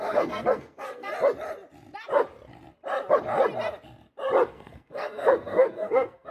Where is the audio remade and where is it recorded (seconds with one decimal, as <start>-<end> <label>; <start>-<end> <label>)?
0.0-1.1 remade; 1.1-4.5 recorded; 4.5-6.3 remade